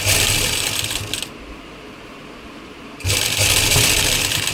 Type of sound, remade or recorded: recorded